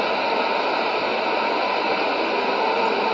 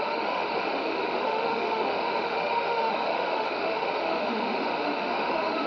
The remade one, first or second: second